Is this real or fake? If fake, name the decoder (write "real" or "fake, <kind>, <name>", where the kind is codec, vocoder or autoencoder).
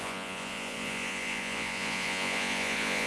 fake, vocoder, Vocos